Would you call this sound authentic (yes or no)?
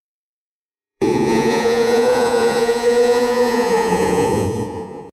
no